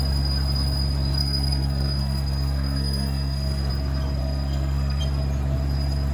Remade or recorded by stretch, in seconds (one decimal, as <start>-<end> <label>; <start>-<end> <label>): 0.0-1.2 recorded; 1.2-3.7 remade; 3.7-4.2 recorded; 4.2-5.0 remade; 5.0-6.1 recorded